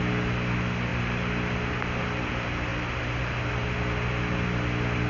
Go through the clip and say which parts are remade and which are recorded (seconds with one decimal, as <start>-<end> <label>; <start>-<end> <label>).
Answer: 0.0-0.9 recorded; 0.9-2.3 remade; 2.3-5.1 recorded